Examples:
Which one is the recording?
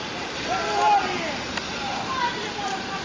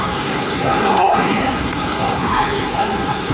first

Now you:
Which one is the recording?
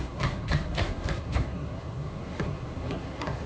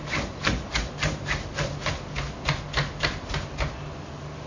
second